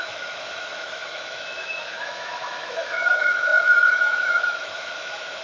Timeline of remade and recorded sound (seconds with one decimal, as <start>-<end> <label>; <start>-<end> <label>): 0.0-5.4 remade